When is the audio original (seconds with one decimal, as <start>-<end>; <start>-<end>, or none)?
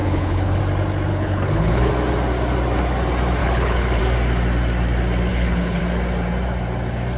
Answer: 0.6-1.1; 1.9-3.4; 4.0-5.3; 5.8-7.2